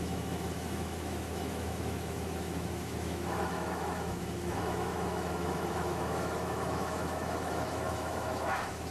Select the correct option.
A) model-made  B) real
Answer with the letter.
A